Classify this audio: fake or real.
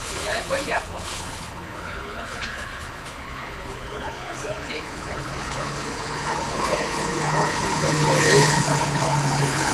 fake